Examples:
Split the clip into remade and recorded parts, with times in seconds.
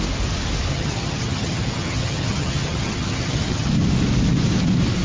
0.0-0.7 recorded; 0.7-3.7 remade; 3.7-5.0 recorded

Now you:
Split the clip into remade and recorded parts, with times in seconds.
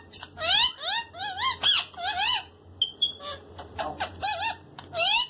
0.0-2.9 recorded; 2.9-4.4 remade; 4.4-5.3 recorded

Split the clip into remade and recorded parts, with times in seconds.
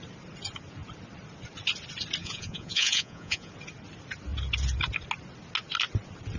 0.0-2.2 recorded; 2.2-3.5 remade; 3.5-6.4 recorded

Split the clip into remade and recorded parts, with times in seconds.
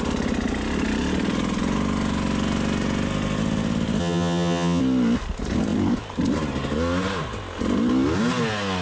0.0-4.0 recorded; 4.0-4.8 remade; 4.8-8.8 recorded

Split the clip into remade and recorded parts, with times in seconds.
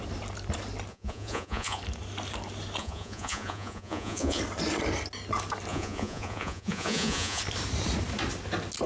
0.0-0.9 recorded; 0.9-1.8 remade; 1.8-2.8 recorded; 2.8-4.4 remade; 4.4-5.7 recorded; 5.7-7.4 remade; 7.4-8.9 recorded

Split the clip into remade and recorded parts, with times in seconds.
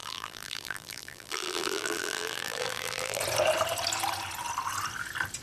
0.0-3.2 remade; 3.2-5.4 recorded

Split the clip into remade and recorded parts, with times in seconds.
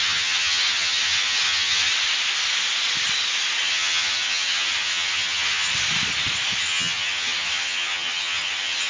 0.0-1.9 remade; 1.9-3.6 recorded; 3.6-5.7 remade; 5.7-6.6 recorded; 6.6-8.9 remade